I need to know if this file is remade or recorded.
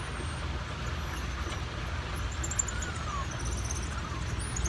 recorded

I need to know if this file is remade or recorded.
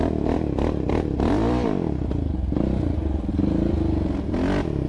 remade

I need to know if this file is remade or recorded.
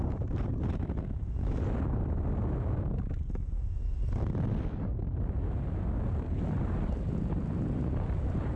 recorded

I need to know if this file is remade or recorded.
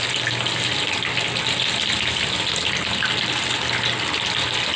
remade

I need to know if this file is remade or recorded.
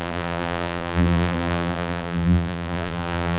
remade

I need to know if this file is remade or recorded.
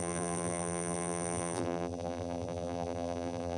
remade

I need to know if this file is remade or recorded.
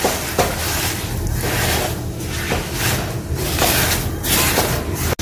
recorded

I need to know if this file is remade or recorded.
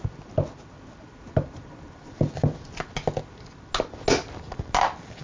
recorded